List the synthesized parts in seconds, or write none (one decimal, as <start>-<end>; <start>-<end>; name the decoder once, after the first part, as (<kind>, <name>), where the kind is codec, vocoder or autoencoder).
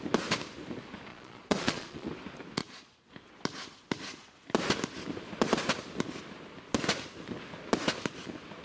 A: 1.1-2.1 (vocoder, Vocos); 2.6-3.1